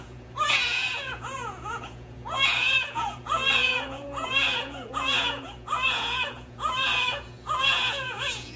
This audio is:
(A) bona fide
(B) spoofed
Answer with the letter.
B